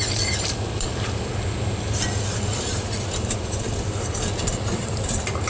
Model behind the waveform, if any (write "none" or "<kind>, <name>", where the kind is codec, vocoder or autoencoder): vocoder, BigVGAN v2